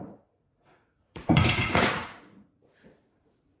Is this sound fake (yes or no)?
yes